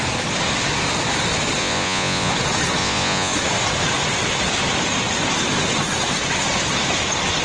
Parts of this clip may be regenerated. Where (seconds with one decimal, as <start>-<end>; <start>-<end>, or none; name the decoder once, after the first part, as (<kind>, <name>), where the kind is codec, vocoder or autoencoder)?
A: 1.6-2.3 (vocoder, Vocos); 2.8-3.3